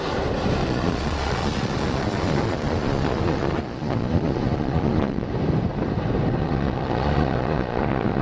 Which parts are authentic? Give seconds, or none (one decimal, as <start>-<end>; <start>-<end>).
0.0-0.6; 5.3-6.4